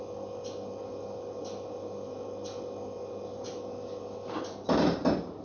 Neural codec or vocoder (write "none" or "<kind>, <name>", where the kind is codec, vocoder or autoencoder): none